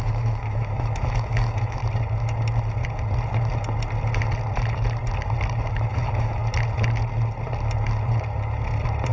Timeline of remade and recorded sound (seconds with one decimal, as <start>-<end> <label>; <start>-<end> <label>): 0.0-1.8 remade; 1.8-5.7 recorded; 5.7-6.4 remade; 6.4-9.1 recorded